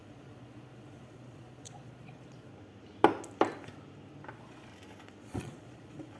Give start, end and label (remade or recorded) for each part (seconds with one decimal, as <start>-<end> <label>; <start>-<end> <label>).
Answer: 0.0-2.5 remade; 2.5-4.3 recorded; 4.3-4.7 remade; 4.7-5.2 recorded; 5.2-6.2 remade